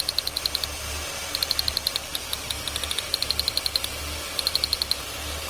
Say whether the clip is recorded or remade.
recorded